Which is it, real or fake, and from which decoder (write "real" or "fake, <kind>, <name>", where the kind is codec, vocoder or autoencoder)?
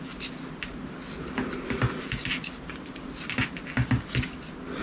real